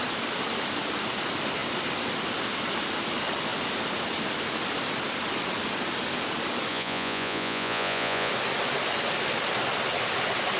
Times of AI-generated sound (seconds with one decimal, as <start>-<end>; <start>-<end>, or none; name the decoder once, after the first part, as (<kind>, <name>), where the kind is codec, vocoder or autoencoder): 6.7-8.3 (vocoder, Vocos)